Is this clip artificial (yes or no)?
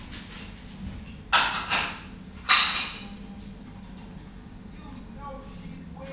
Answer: no